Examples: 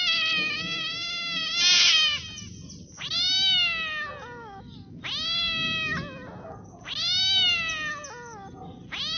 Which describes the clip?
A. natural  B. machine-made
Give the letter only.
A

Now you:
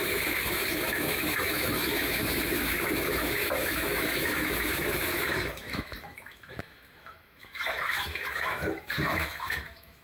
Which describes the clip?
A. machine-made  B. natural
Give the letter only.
A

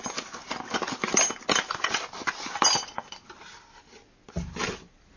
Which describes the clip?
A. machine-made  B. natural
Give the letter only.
B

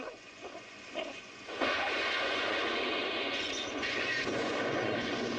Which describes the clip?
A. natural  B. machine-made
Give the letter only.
B